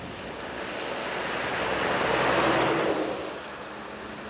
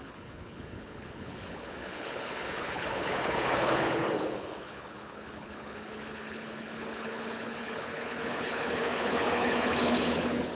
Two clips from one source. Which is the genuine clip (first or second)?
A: first